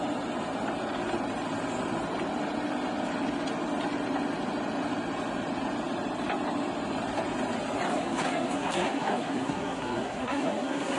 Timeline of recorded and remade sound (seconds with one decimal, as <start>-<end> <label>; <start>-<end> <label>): 0.0-7.9 recorded; 7.9-11.0 remade